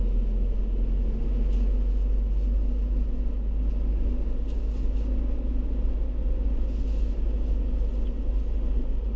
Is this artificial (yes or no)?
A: no